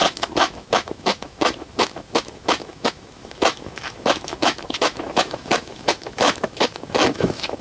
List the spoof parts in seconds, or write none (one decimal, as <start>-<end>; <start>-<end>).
0.0-7.6